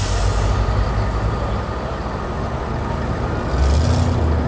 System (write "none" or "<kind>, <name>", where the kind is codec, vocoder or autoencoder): none